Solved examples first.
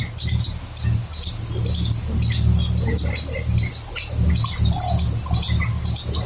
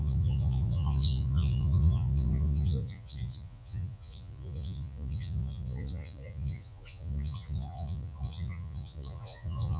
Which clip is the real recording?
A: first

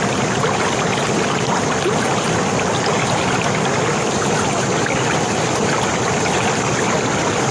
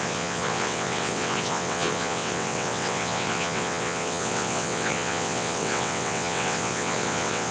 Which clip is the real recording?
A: first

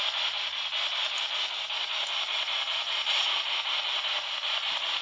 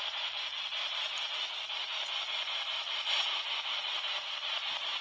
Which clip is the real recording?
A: first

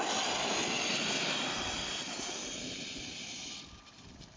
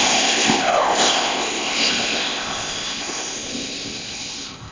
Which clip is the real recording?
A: first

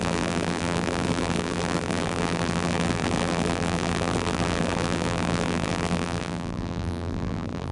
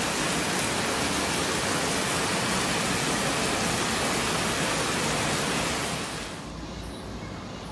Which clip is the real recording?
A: second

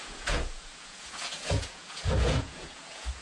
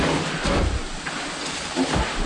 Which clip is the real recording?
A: second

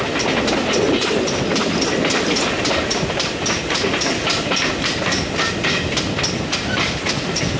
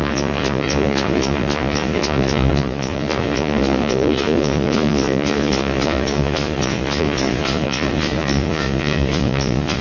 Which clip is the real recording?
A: first